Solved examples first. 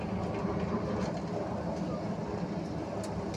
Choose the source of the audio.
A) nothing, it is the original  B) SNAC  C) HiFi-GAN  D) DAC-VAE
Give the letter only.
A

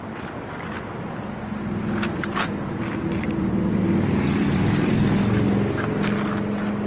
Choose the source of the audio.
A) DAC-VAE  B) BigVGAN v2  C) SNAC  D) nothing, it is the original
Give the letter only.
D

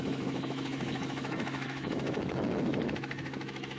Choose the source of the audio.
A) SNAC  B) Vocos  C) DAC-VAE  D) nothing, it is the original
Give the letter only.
C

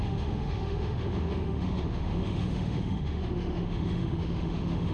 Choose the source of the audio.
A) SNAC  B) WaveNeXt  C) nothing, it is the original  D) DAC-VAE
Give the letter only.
D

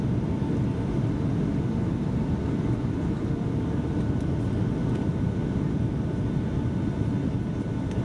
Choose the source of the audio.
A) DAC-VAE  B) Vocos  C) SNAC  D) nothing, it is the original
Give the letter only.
D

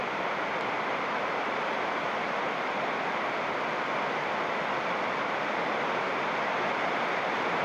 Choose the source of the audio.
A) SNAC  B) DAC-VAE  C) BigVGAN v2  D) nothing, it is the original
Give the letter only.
D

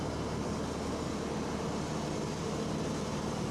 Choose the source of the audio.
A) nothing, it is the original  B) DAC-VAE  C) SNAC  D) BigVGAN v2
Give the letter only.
A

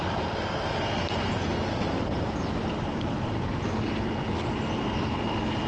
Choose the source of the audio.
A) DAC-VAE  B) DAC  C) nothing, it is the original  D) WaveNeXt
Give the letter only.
C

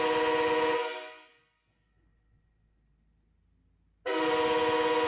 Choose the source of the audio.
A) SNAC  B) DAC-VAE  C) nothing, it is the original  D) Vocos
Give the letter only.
C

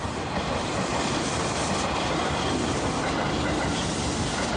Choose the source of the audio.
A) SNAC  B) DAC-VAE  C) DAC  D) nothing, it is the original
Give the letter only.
D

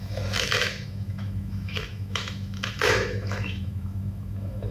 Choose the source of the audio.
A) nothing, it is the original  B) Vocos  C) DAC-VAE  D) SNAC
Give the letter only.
C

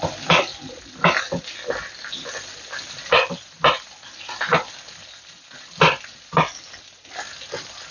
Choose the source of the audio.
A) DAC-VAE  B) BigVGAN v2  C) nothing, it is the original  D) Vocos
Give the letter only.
C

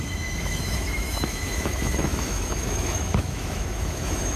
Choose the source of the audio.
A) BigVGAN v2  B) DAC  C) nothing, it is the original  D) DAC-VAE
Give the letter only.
D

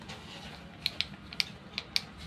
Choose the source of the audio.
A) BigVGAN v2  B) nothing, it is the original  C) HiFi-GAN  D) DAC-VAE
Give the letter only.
B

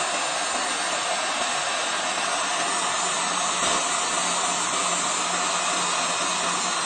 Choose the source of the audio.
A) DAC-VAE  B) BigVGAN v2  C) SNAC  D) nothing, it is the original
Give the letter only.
D